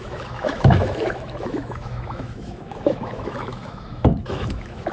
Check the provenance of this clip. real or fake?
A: fake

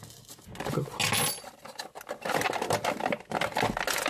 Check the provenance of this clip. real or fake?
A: real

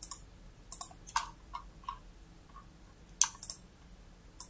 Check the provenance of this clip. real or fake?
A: real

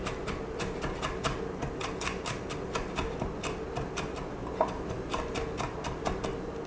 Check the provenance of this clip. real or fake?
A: real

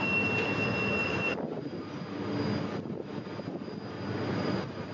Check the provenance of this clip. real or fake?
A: real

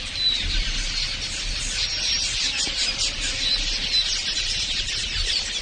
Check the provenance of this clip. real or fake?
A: real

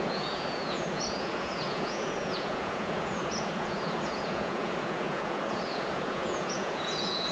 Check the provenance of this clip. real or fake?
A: fake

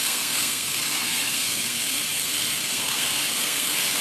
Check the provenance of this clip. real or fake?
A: fake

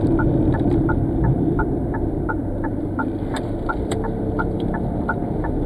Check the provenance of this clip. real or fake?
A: fake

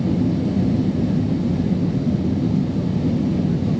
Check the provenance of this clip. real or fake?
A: real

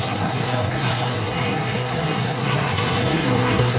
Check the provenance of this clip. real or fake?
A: fake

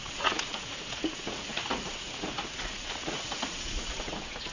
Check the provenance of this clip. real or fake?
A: fake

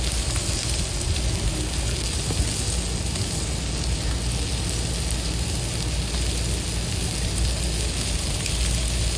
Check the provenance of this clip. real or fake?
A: real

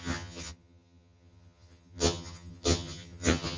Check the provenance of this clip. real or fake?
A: fake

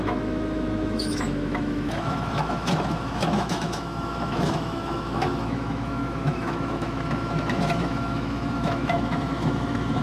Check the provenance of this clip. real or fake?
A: fake